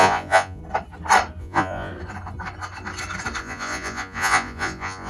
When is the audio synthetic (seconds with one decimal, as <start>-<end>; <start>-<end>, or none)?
0.0-0.6; 1.4-1.9; 3.4-5.1